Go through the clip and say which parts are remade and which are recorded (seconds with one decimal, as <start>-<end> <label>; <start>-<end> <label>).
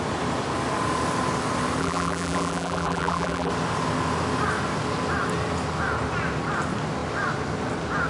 0.0-1.8 recorded; 1.8-3.5 remade; 3.5-8.1 recorded